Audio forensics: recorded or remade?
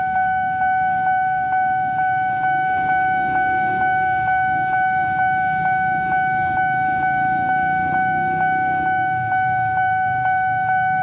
remade